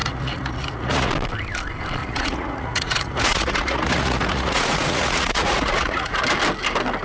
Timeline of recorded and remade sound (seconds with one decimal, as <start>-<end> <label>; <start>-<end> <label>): 0.0-1.1 remade; 1.1-2.0 recorded; 2.0-6.2 remade; 6.2-7.0 recorded